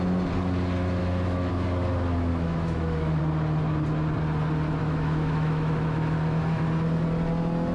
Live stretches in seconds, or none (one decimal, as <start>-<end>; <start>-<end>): 0.0-1.0; 1.5-2.3; 3.2-4.8; 6.6-7.7